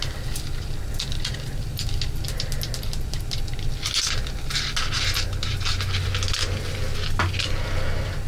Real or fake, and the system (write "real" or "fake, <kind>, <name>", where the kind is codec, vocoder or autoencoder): real